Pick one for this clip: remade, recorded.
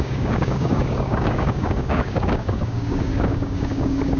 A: remade